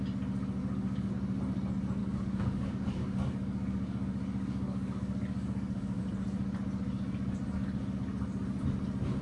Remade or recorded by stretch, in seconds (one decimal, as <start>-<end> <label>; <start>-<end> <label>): 0.0-0.6 recorded; 0.6-1.1 remade; 1.1-2.0 recorded; 2.0-6.0 remade; 6.0-9.2 recorded